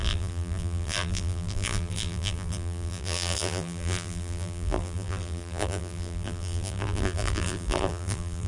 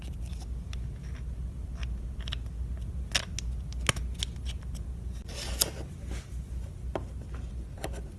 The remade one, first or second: first